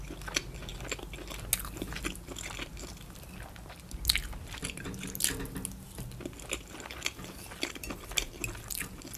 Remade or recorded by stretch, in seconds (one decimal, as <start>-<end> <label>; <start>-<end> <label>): 0.0-9.2 recorded